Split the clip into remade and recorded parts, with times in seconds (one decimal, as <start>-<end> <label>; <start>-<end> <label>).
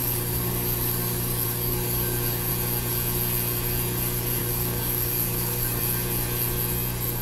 0.0-2.5 remade; 2.5-4.4 recorded; 4.4-5.8 remade; 5.8-7.2 recorded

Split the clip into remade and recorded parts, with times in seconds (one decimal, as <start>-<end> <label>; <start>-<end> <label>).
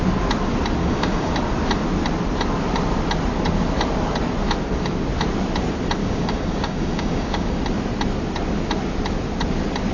0.0-0.8 recorded; 0.8-1.3 remade; 1.3-6.0 recorded; 6.0-7.6 remade; 7.6-9.9 recorded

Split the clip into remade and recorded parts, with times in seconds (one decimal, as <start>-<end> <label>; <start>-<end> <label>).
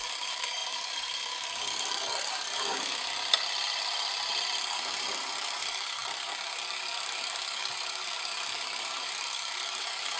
0.0-3.1 remade; 3.1-4.6 recorded; 4.6-10.2 remade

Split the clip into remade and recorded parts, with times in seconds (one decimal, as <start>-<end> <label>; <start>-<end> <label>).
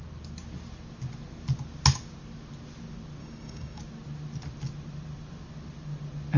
0.0-3.2 recorded; 3.2-3.8 remade; 3.8-6.4 recorded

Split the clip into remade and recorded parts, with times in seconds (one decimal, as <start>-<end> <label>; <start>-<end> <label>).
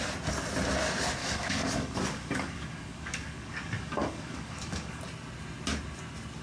0.0-1.2 recorded; 1.2-5.0 remade; 5.0-6.4 recorded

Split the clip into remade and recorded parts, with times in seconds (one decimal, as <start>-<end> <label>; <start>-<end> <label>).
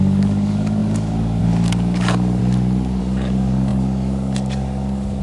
0.0-2.4 remade; 2.4-3.0 recorded; 3.0-5.2 remade